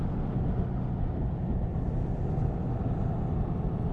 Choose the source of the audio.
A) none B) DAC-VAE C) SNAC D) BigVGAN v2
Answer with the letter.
A